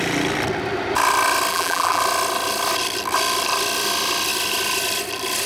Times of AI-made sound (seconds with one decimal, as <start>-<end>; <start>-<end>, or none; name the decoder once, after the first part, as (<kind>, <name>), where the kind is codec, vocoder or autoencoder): 1.5-2.0 (vocoder, BigVGAN v2)